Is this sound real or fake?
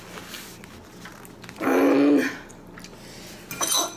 real